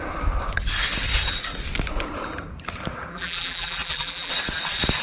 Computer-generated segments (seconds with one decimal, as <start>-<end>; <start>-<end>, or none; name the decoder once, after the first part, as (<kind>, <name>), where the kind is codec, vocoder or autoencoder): 3.1-4.3 (vocoder, BigVGAN v2)